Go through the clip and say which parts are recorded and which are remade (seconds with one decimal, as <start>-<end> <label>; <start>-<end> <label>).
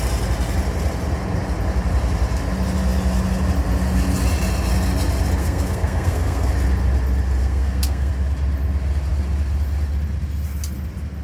0.0-5.4 recorded; 5.4-6.5 remade; 6.5-7.4 recorded; 7.4-8.1 remade; 8.1-11.2 recorded